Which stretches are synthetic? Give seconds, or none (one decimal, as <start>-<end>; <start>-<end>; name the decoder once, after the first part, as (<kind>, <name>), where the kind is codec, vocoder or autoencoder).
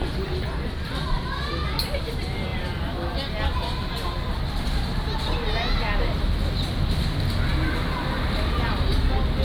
none